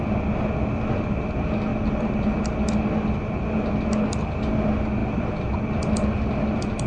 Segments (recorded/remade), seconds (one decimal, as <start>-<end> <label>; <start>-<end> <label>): 0.0-1.7 recorded; 1.7-2.4 remade; 2.4-5.0 recorded; 5.0-5.7 remade; 5.7-6.9 recorded